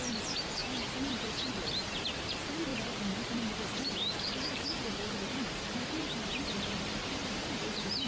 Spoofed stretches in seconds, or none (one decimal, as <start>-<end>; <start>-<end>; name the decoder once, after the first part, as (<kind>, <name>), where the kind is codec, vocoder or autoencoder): 0.0-0.6 (vocoder, BigVGAN v2); 1.1-8.1